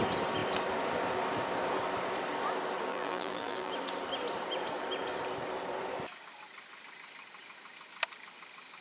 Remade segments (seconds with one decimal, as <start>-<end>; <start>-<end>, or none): 2.9-3.7